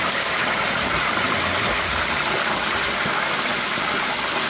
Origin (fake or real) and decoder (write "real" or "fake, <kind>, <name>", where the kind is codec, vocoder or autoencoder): real